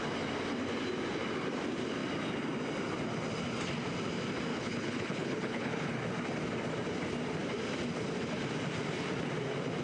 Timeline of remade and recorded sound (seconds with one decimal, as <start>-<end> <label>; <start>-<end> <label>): 0.0-4.5 recorded; 4.5-6.0 remade; 6.0-9.8 recorded